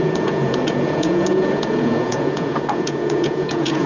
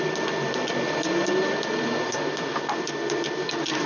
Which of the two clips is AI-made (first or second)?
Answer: first